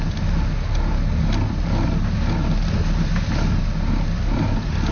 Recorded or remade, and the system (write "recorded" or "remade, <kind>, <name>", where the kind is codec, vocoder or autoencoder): recorded